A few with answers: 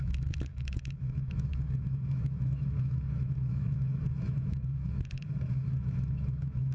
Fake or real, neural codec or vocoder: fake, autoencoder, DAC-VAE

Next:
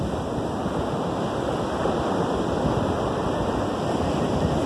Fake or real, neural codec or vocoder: real